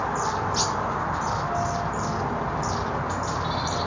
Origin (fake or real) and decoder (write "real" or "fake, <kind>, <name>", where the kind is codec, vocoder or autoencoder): real